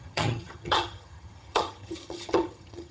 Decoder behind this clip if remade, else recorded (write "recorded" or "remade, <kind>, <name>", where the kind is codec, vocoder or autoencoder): remade, vocoder, HiFi-GAN